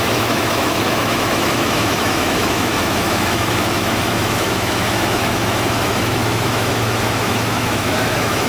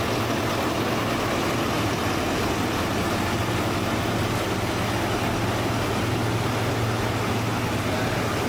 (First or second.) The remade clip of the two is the first